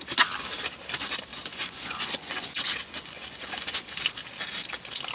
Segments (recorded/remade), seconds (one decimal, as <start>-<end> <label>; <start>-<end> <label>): 0.0-1.3 recorded; 1.3-3.9 remade; 3.9-5.1 recorded